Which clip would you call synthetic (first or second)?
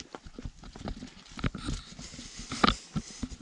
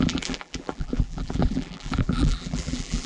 second